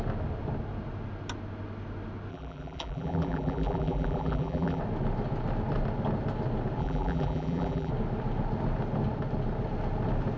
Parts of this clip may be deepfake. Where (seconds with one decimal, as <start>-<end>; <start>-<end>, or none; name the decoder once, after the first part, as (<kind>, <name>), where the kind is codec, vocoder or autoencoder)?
2.3-4.8 (vocoder, BigVGAN v2); 6.8-7.9